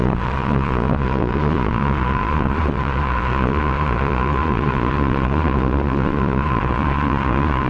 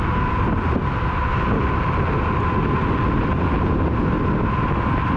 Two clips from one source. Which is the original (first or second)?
second